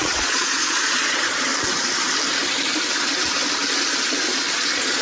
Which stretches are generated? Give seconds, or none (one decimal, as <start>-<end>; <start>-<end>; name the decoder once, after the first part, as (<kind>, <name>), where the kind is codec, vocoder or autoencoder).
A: 0.0-1.5 (vocoder, Vocos); 4.5-5.0